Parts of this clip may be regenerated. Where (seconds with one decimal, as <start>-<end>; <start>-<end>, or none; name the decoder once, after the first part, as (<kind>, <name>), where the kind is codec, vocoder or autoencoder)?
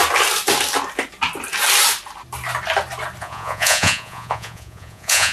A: 3.2-5.3 (vocoder, Vocos)